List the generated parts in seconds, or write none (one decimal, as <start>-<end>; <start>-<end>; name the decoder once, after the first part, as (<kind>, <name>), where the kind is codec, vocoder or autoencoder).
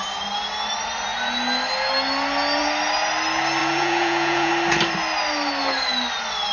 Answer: 3.6-4.5 (vocoder, Vocos)